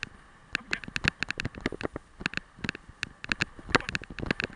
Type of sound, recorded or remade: recorded